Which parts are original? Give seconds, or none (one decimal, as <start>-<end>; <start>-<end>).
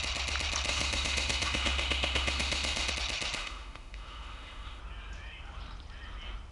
0.0-0.7; 2.9-3.4; 4.8-6.5